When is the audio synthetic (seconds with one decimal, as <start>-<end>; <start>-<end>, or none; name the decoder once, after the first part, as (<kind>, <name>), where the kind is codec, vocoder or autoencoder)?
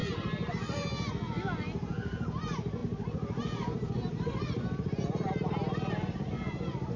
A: none